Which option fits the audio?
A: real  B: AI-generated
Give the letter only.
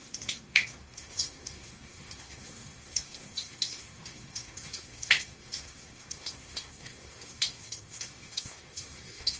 B